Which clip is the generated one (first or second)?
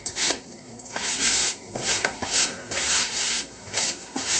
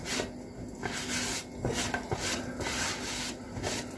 first